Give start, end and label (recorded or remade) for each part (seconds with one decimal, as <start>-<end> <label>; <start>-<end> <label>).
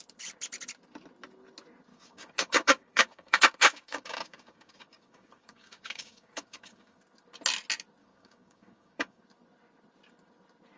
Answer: 0.0-1.9 recorded; 1.9-7.0 remade; 7.0-8.0 recorded; 8.0-9.2 remade; 9.2-10.8 recorded